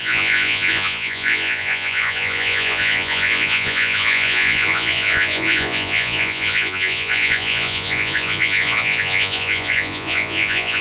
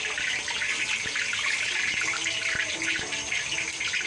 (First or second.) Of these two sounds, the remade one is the first